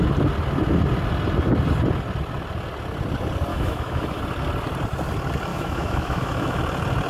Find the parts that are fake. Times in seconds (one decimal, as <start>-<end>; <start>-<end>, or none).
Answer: 3.5-4.2; 5.5-6.6